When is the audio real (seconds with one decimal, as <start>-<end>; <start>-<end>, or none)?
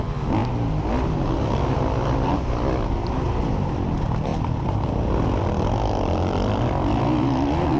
0.0-7.8